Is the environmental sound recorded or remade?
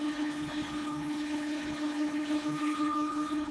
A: remade